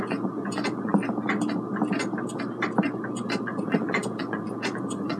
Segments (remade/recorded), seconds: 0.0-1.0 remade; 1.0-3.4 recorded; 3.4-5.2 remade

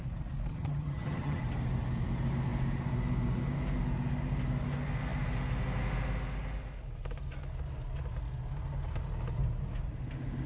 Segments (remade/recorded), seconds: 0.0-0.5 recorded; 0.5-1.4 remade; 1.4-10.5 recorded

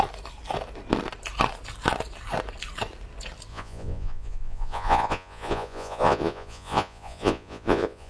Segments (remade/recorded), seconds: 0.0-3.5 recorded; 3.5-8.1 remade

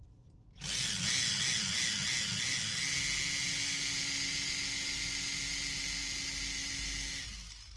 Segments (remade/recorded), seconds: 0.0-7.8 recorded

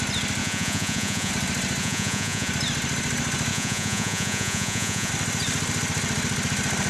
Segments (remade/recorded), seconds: 0.0-0.4 recorded; 0.4-1.3 remade; 1.3-1.8 recorded; 1.8-2.5 remade; 2.5-3.5 recorded; 3.5-5.1 remade; 5.1-6.9 recorded